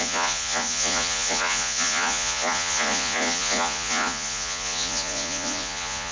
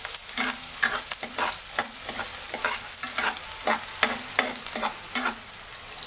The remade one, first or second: first